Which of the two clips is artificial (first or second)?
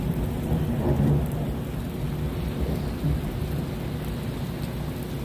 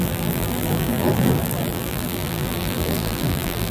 second